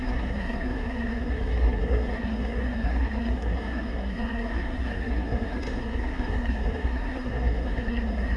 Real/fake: fake